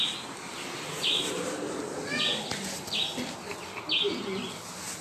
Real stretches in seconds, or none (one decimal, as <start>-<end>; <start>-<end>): 0.0-0.9; 1.8-5.0